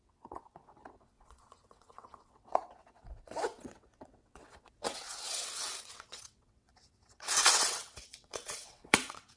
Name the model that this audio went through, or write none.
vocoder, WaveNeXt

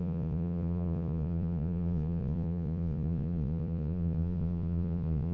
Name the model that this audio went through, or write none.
vocoder, Vocos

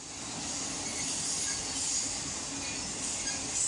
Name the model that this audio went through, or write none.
none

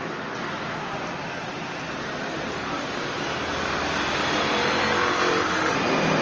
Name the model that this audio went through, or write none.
none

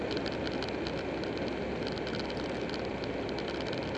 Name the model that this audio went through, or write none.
none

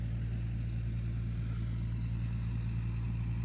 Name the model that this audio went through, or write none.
none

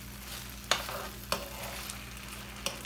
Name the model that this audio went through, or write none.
none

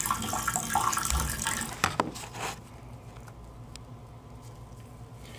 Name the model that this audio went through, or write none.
none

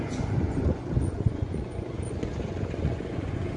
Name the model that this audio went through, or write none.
vocoder, Vocos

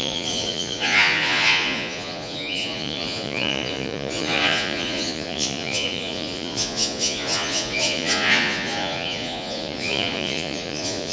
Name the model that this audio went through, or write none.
vocoder, Vocos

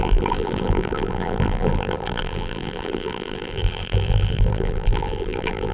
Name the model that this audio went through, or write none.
vocoder, BigVGAN v2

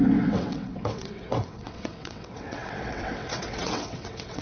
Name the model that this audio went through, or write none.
vocoder, WaveNeXt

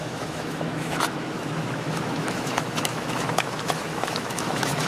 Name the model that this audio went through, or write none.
autoencoder, DAC-VAE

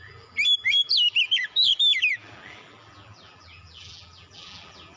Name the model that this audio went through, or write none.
vocoder, BigVGAN v2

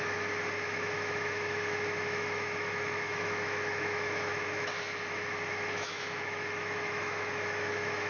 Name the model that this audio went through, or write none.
autoencoder, DAC-VAE